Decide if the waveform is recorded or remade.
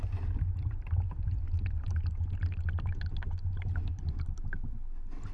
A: recorded